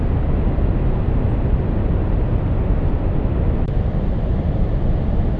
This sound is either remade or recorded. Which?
recorded